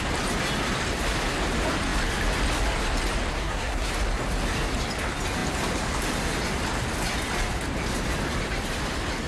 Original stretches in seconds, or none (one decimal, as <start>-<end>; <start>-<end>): 0.0-3.3; 3.9-9.3